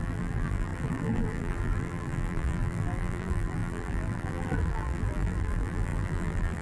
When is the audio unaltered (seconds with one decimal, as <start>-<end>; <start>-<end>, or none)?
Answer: none